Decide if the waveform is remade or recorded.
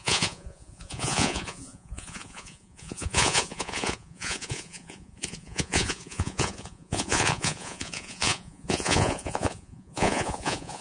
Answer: remade